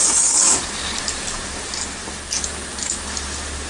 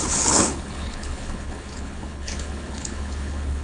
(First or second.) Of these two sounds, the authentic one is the first